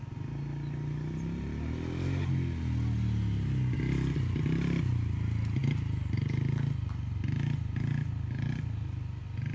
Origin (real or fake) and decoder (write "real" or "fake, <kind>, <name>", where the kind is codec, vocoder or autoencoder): real